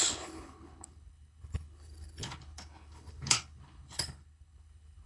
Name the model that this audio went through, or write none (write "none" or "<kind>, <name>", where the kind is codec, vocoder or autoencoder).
codec, HILCodec